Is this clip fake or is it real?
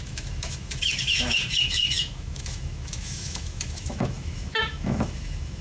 fake